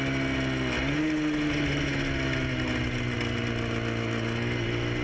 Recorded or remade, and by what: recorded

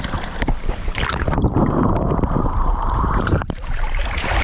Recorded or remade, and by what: remade, vocoder, BigVGAN v2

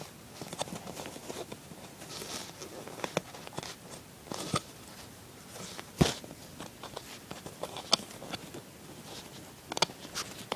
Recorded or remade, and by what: recorded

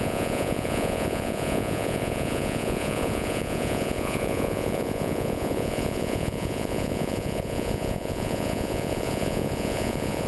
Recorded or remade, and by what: remade, vocoder, Vocos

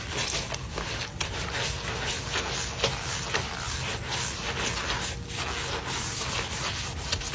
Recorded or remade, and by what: recorded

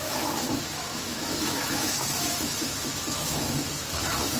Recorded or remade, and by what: remade, autoencoder, DAC-VAE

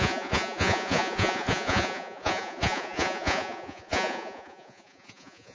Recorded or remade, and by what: remade, vocoder, Vocos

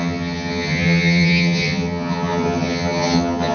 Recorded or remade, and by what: remade, vocoder, HiFi-GAN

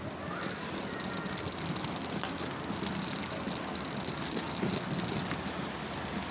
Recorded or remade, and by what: recorded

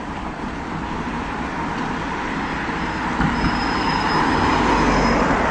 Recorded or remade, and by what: recorded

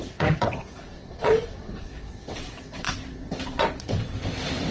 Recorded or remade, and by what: remade, vocoder, WaveNeXt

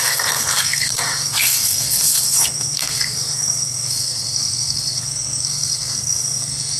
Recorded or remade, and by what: remade, codec, SNAC